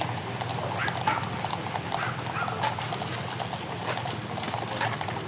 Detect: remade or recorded recorded